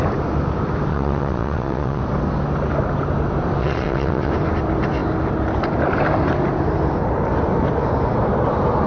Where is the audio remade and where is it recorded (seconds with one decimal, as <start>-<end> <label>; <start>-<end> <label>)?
0.0-0.9 recorded; 0.9-2.0 remade; 2.0-3.6 recorded; 3.6-4.3 remade; 4.3-8.9 recorded